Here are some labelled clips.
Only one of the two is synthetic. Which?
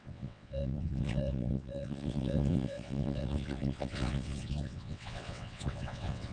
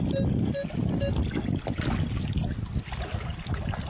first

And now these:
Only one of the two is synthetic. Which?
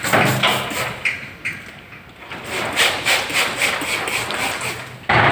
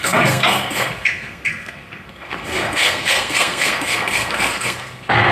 second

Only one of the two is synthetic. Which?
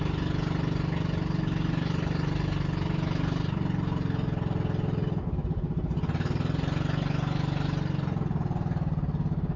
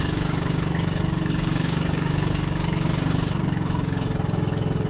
second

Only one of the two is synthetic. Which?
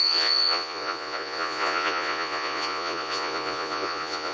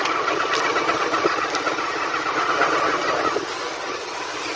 first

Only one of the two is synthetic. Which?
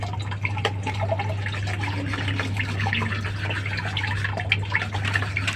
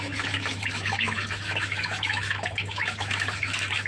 second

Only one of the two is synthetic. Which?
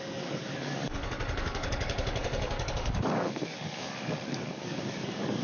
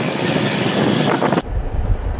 first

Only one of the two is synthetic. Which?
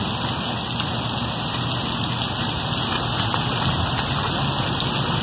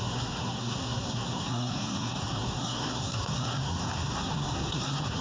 second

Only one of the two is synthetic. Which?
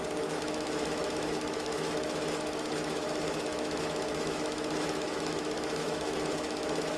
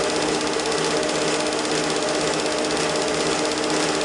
first